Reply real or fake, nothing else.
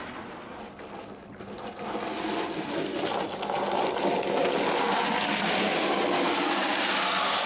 real